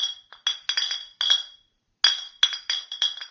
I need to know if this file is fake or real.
real